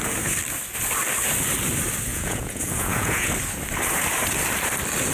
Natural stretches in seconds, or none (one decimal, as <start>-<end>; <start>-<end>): 0.0-2.1; 3.3-5.1